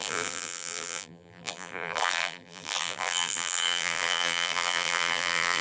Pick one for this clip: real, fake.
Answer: fake